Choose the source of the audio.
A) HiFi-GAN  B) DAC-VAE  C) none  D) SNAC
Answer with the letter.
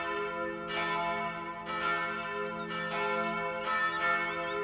C